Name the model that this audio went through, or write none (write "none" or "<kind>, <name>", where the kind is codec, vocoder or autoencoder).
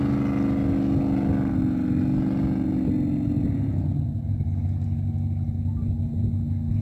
none